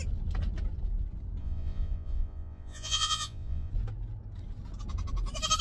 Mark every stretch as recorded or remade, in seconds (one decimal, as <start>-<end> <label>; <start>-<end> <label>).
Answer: 0.0-1.4 recorded; 1.4-3.7 remade; 3.7-5.6 recorded